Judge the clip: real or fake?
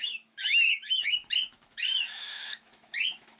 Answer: fake